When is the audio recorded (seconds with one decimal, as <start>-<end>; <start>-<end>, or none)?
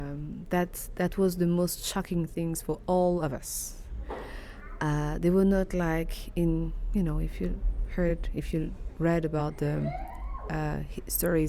0.0-11.5